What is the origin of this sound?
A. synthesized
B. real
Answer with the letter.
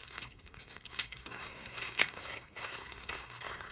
A